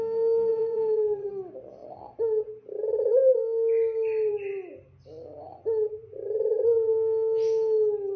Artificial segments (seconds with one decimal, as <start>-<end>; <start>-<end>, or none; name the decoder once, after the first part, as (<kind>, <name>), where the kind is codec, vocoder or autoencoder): 0.5-1.3 (vocoder, Vocos); 6.0-6.6